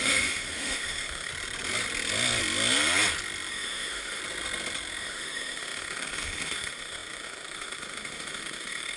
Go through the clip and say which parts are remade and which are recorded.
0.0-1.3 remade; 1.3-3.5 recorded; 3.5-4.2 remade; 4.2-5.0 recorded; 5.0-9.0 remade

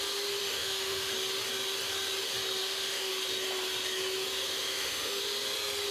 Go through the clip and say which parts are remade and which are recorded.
0.0-0.4 recorded; 0.4-1.1 remade; 1.1-2.6 recorded; 2.6-3.1 remade; 3.1-4.5 recorded; 4.5-5.2 remade; 5.2-5.9 recorded

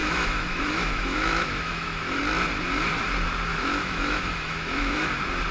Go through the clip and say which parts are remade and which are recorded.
0.0-2.2 remade; 2.2-3.5 recorded; 3.5-5.1 remade; 5.1-5.5 recorded

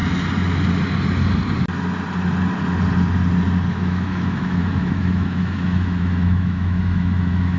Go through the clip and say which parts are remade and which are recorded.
0.0-3.7 recorded; 3.7-7.6 remade